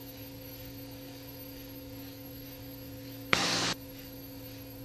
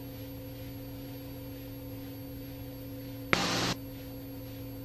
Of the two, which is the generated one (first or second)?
first